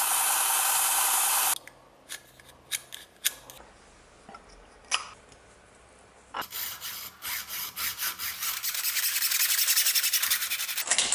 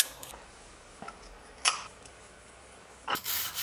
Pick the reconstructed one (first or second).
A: second